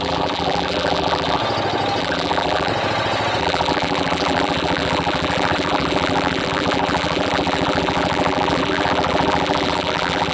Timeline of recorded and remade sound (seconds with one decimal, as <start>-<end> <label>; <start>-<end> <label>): 0.0-1.4 remade; 1.4-2.0 recorded; 2.0-2.7 remade; 2.7-3.4 recorded; 3.4-10.3 remade